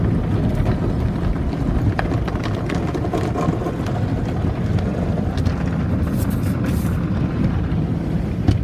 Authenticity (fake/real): real